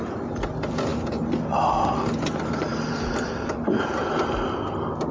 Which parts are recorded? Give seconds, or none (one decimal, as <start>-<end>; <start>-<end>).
0.0-0.9; 1.7-2.7; 3.8-5.1